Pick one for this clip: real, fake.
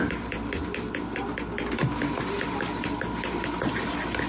real